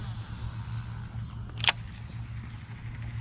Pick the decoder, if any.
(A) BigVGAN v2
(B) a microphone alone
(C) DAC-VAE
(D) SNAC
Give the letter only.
B